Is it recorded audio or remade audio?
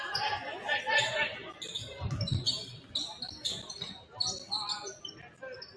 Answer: recorded